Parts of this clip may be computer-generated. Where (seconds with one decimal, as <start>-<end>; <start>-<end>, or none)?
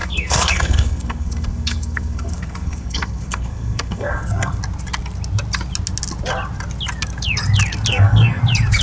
0.0-4.6; 7.9-8.4